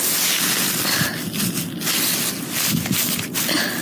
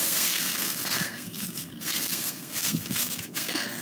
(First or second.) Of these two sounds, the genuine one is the first